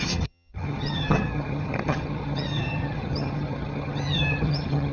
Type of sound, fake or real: fake